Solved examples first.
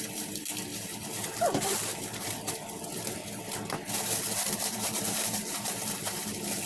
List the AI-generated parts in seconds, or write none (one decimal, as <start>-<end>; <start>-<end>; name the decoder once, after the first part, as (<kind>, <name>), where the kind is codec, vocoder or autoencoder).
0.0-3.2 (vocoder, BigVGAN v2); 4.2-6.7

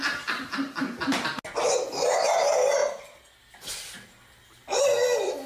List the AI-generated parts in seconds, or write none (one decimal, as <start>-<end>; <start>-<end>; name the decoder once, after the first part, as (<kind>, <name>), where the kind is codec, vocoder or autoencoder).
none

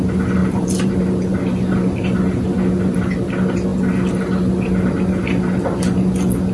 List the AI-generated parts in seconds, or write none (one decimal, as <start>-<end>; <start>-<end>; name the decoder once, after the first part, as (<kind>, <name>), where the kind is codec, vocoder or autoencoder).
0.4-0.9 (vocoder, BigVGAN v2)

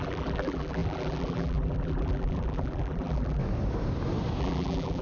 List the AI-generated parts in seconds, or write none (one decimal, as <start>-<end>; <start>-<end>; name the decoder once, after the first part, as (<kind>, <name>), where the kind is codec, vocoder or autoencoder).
0.0-3.4 (vocoder, BigVGAN v2); 4.4-5.0

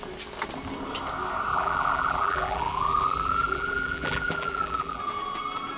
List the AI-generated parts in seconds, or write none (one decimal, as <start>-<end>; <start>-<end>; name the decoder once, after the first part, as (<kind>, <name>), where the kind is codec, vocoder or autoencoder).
1.5-5.0 (vocoder, BigVGAN v2)